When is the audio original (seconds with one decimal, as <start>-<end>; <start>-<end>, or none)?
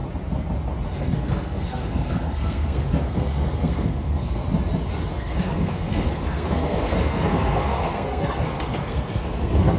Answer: 0.0-0.9; 4.4-5.1